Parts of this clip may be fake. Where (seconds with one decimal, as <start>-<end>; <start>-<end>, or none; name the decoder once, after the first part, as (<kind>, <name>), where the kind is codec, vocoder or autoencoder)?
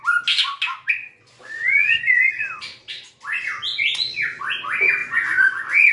1.0-2.3 (vocoder, Vocos); 3.7-4.4; 5.0-5.9